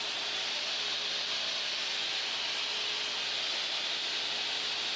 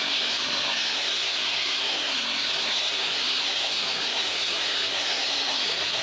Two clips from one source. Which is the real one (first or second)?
first